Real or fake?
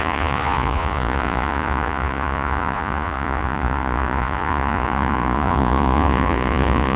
fake